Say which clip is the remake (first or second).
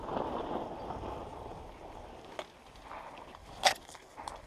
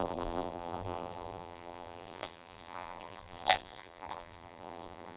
second